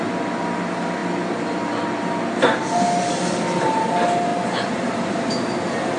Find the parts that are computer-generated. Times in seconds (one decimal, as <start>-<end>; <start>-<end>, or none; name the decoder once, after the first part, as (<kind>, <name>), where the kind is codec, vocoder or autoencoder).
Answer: none